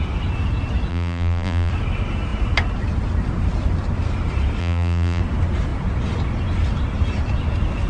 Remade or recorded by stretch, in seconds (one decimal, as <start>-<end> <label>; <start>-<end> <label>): 0.0-0.9 recorded; 0.9-1.7 remade; 1.7-4.6 recorded; 4.6-5.2 remade; 5.2-7.9 recorded